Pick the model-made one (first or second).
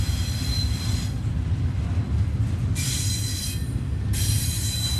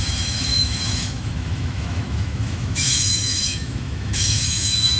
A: second